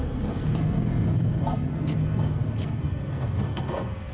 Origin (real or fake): fake